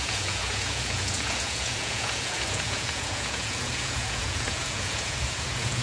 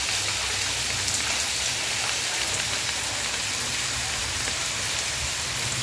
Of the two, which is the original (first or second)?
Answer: second